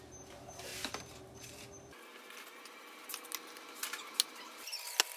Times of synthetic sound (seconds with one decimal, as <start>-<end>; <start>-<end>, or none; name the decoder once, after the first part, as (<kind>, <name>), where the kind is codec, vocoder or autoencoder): none